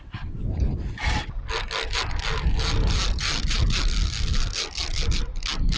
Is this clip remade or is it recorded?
recorded